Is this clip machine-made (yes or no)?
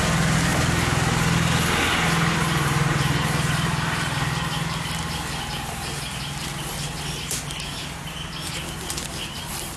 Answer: no